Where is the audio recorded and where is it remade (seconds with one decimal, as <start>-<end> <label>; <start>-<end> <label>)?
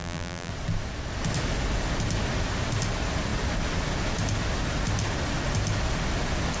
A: 0.0-0.5 remade; 0.5-6.6 recorded